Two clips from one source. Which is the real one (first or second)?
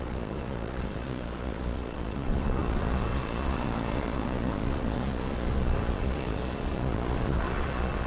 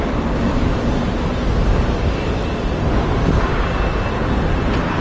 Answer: second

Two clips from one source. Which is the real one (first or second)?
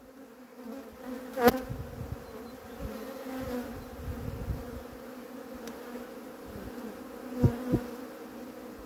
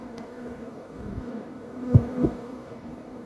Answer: first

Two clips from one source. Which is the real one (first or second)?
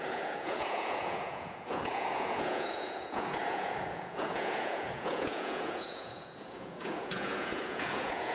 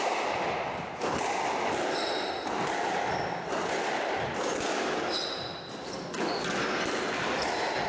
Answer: second